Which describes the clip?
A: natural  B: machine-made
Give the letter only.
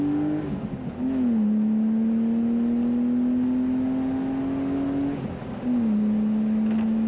A